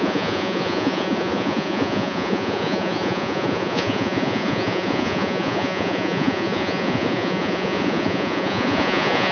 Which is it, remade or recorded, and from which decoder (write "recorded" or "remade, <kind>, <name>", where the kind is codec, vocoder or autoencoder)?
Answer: remade, vocoder, Vocos